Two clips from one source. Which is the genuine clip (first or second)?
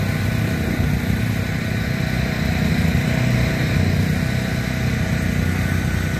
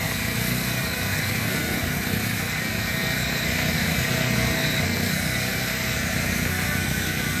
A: first